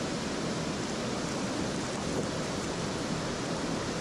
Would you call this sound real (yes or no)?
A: yes